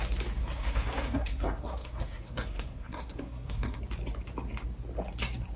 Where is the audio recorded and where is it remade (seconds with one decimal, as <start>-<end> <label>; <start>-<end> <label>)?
0.0-0.4 recorded; 0.4-3.8 remade; 3.8-5.6 recorded